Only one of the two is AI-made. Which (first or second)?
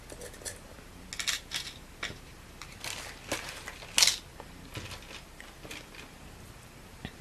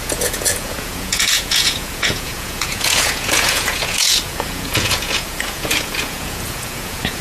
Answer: second